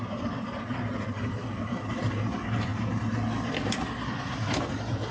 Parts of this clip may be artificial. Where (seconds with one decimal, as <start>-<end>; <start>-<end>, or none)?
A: none